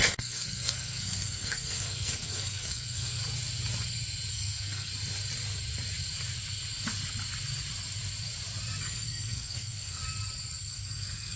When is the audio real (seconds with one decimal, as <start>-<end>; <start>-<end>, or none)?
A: 3.2-4.3; 4.9-8.8; 10.0-10.6